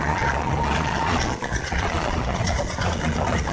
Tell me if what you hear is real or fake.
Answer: fake